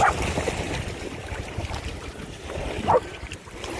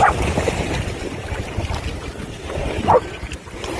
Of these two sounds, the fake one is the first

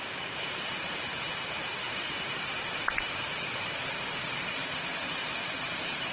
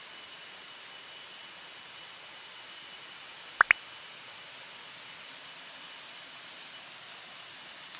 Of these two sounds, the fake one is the first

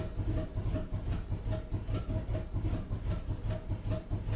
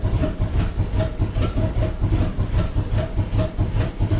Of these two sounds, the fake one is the second